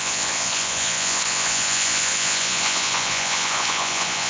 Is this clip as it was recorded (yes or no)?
no